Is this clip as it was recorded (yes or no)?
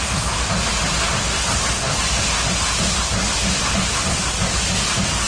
yes